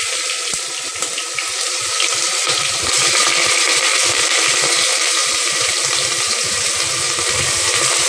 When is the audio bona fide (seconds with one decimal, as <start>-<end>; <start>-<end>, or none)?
0.0-3.9; 4.5-5.2; 5.7-8.1